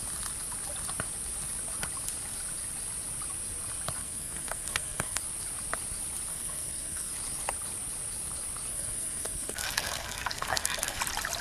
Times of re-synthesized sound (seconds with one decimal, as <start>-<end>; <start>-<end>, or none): 4.0-5.2; 6.3-7.1; 8.7-11.0